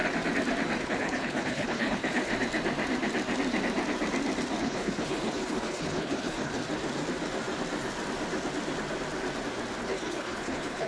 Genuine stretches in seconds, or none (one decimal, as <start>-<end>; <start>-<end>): 0.0-0.8; 2.3-4.6; 6.5-9.8